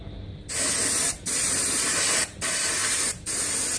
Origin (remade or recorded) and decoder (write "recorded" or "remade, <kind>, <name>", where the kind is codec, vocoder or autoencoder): recorded